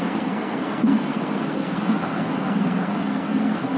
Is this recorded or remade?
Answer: remade